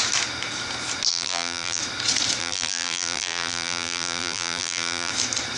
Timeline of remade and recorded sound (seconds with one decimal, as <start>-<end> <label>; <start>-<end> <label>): 0.0-1.1 recorded; 1.1-1.8 remade; 1.8-2.4 recorded; 2.4-5.1 remade; 5.1-5.6 recorded